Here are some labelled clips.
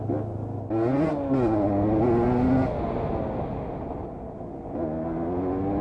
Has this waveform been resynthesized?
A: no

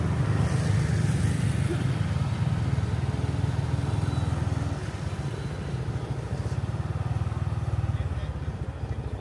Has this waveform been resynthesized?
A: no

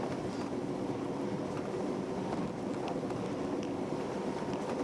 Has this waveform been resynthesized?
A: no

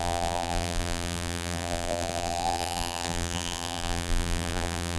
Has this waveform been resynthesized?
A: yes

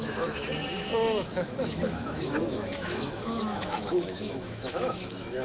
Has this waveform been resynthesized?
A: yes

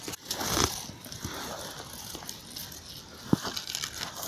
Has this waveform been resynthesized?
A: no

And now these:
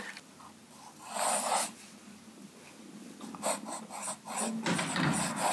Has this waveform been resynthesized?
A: no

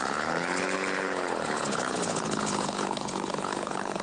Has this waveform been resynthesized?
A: yes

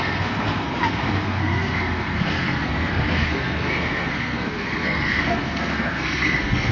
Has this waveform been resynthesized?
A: yes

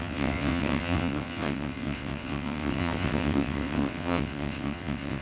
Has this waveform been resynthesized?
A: yes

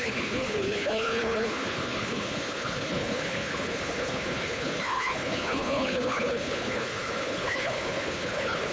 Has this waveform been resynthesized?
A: yes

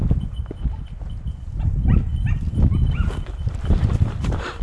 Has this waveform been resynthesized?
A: no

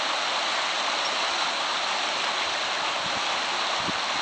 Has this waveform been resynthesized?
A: no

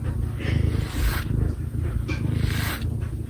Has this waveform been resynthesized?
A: no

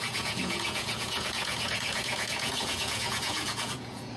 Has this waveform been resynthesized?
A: yes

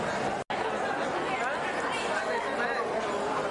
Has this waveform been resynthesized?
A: no